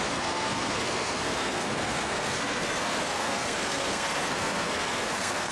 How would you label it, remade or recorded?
remade